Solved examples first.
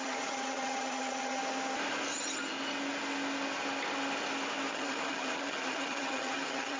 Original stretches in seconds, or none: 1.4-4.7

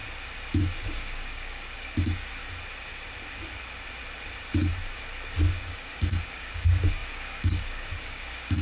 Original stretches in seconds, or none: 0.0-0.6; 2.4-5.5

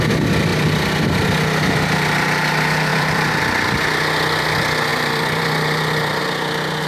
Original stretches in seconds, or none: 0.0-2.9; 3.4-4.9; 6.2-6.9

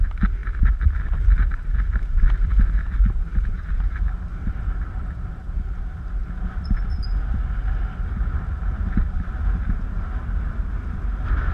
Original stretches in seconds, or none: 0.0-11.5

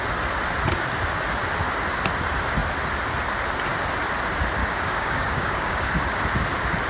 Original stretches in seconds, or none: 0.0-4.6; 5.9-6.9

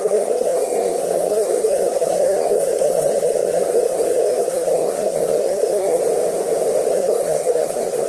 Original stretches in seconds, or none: 6.0-6.9